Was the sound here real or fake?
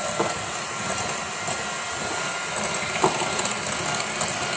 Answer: real